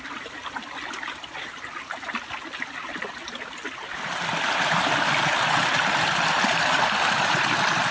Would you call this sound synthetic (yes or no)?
no